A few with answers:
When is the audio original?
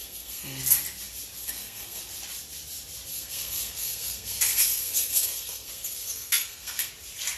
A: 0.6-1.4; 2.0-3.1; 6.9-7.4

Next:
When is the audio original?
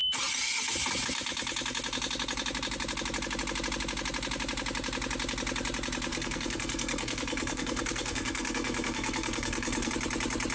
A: 0.0-6.1; 9.9-10.5